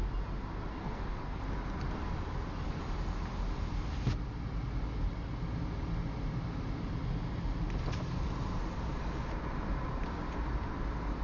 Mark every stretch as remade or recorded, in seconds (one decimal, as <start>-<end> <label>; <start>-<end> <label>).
0.0-0.8 recorded; 0.8-1.4 remade; 1.4-11.2 recorded